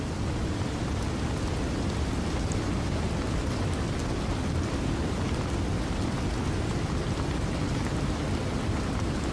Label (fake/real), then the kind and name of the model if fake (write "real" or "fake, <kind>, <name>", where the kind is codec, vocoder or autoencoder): real